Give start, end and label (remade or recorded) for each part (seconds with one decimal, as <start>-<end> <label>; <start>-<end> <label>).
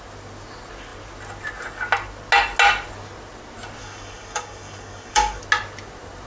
0.0-3.8 recorded; 3.8-5.4 remade; 5.4-6.3 recorded